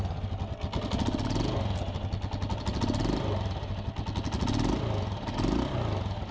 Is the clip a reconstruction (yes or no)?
no